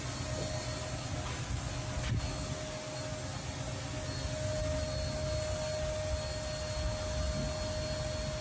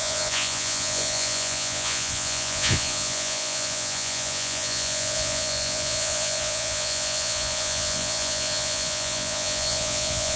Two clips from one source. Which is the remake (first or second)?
second